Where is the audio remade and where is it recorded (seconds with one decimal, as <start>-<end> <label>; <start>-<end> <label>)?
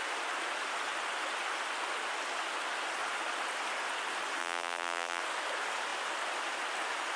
0.0-4.4 recorded; 4.4-5.2 remade; 5.2-7.2 recorded